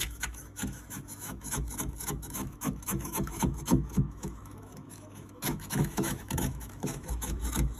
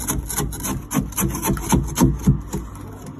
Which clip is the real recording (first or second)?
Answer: second